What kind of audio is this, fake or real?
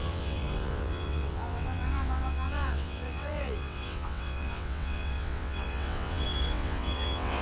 fake